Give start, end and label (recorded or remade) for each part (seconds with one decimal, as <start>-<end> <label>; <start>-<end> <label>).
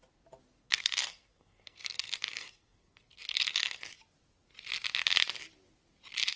0.0-0.6 recorded; 0.6-3.8 remade; 3.8-6.4 recorded